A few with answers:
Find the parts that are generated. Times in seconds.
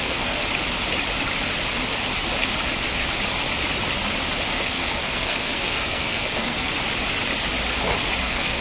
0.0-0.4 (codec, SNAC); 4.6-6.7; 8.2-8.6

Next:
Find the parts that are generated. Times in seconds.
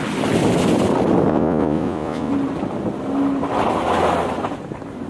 1.3-2.3 (vocoder, Vocos)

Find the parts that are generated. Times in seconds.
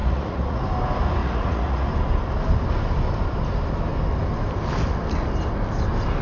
0.0-0.6 (vocoder, Vocos); 1.2-1.9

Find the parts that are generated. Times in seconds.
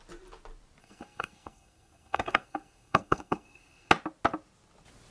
0.8-3.9 (codec, SNAC)